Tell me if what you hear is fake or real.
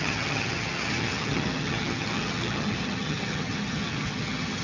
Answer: fake